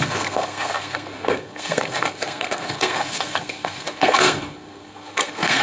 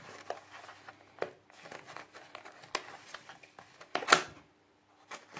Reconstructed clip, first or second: first